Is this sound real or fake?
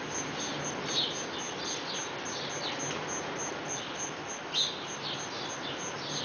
real